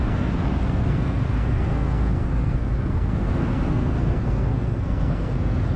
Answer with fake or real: fake